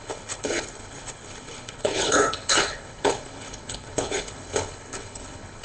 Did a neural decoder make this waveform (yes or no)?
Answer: yes